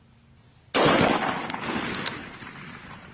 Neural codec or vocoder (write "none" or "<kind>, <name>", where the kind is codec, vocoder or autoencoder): none